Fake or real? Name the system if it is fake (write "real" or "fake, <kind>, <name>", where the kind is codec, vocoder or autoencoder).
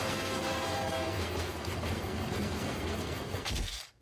fake, codec, SNAC